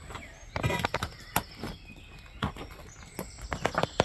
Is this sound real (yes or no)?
yes